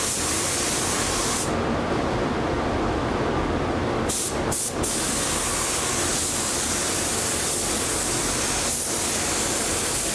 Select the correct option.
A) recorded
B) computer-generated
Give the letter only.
A